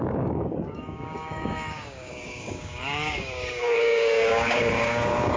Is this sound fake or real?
fake